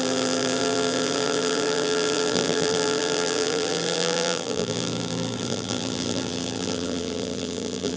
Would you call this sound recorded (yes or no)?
no